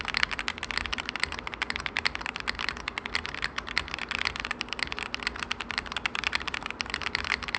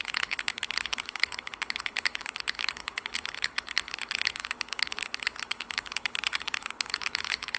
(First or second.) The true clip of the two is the first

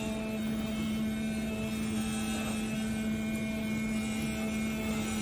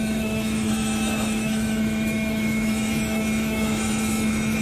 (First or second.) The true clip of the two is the first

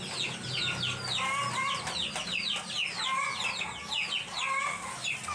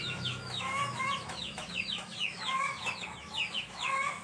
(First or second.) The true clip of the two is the first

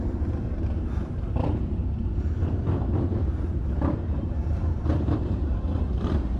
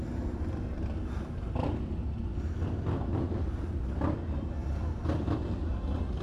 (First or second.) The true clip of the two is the second